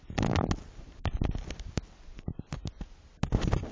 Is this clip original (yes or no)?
yes